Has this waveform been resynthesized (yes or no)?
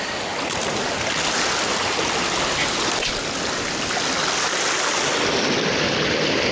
no